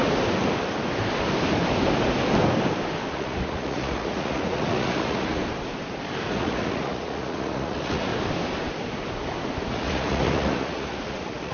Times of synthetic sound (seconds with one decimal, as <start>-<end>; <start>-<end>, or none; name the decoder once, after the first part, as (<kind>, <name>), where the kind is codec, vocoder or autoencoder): 3.1-5.4 (vocoder, Vocos); 6.3-8.1; 9.7-11.5